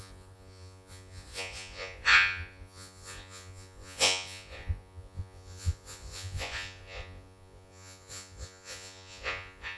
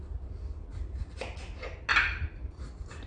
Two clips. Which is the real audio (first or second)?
second